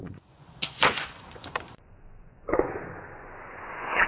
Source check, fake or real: fake